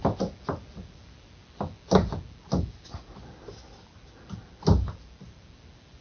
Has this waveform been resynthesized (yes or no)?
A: no